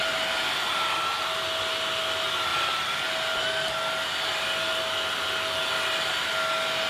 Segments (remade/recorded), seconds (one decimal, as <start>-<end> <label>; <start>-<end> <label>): 0.0-6.9 recorded